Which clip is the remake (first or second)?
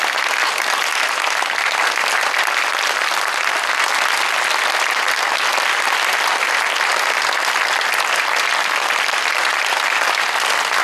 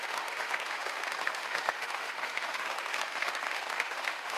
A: second